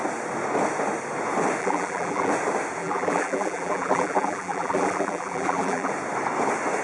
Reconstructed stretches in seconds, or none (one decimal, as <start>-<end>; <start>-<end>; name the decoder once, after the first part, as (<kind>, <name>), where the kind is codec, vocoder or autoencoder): 1.6-2.3 (vocoder, BigVGAN v2); 2.8-5.9